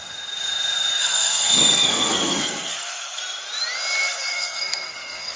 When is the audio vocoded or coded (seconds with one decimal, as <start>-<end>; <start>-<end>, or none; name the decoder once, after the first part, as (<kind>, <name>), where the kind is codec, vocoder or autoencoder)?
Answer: 1.0-3.2 (codec, SNAC); 4.0-5.4